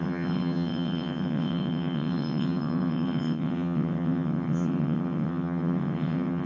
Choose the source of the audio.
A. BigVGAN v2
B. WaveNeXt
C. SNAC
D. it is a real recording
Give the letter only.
B